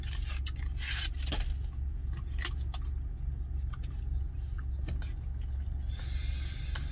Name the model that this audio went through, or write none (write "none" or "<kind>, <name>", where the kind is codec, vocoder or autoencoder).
none